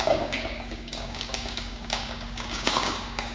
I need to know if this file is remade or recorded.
remade